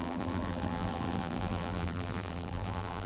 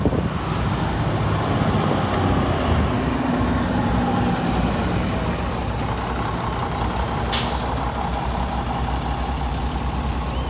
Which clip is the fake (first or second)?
first